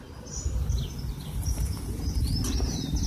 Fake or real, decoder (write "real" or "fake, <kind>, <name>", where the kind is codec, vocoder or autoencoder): real